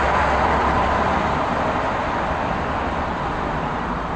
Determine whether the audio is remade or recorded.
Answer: remade